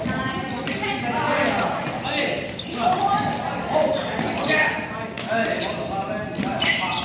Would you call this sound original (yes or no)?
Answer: yes